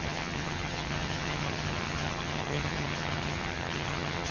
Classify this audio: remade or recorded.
remade